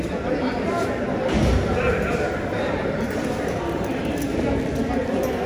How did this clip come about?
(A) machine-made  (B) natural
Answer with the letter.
B